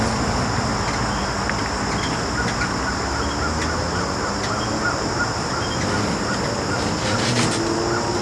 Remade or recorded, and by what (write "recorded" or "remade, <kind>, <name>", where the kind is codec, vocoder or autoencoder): recorded